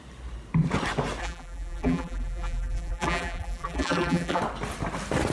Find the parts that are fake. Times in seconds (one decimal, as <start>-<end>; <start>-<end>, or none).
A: 1.2-4.4